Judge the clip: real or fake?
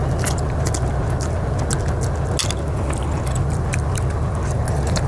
real